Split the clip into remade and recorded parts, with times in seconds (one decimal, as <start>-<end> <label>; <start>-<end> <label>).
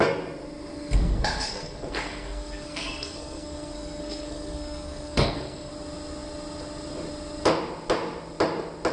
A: 0.0-0.7 recorded; 0.7-5.7 remade; 5.7-8.9 recorded